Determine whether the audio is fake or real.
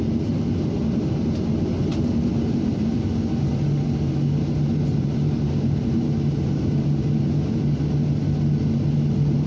real